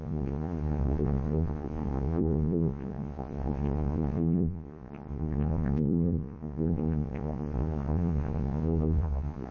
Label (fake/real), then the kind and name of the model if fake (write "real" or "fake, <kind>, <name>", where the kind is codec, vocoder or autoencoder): fake, vocoder, Vocos